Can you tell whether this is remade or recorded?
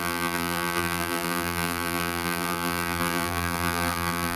remade